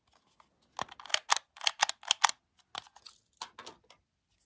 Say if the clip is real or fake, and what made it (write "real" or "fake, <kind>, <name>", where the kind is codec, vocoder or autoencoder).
real